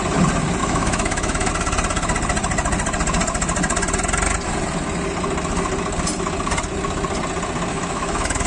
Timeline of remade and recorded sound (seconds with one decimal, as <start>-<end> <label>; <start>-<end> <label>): 0.0-0.6 recorded; 0.6-1.5 remade; 1.5-7.7 recorded; 7.7-8.5 remade